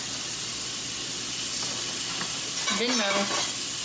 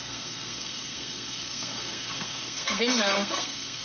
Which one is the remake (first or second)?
second